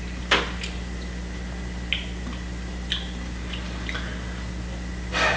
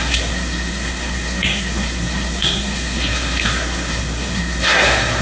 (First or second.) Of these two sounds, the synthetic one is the second